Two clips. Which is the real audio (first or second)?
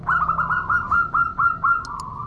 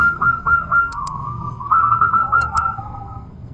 first